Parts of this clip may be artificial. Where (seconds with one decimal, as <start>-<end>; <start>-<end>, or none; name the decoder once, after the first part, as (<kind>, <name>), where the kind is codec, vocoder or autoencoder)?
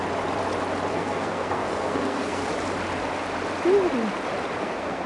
0.9-2.4 (codec, SNAC); 4.6-5.1